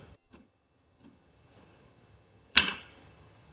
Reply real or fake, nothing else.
fake